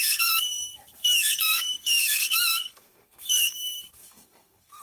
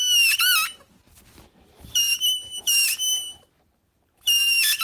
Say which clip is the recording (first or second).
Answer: second